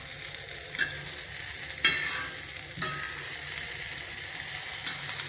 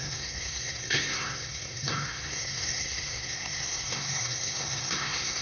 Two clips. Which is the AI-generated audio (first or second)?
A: second